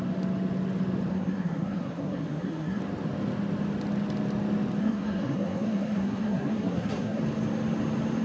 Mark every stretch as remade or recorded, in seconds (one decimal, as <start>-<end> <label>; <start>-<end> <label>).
0.0-1.1 recorded; 1.1-2.8 remade; 2.8-4.8 recorded; 4.8-7.2 remade; 7.2-8.2 recorded